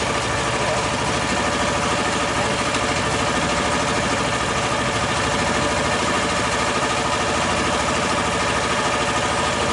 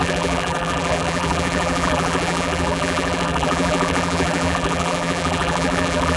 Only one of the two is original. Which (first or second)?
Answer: first